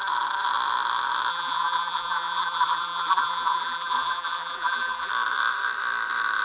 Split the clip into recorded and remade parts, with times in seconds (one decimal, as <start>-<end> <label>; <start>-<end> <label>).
0.0-1.3 recorded; 1.3-5.1 remade; 5.1-6.4 recorded